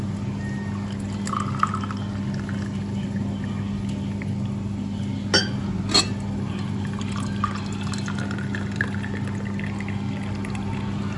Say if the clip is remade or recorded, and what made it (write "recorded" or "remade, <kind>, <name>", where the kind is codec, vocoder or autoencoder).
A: recorded